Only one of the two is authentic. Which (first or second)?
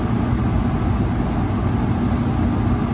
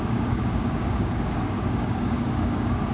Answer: first